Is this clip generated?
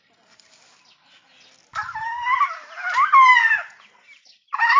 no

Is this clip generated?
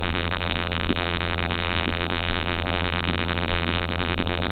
yes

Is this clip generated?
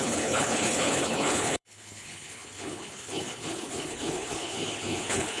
yes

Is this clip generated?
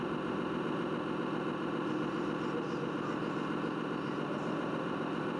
no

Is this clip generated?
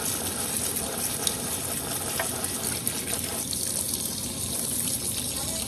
no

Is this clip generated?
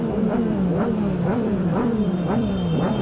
yes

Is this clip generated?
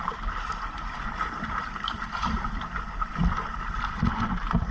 no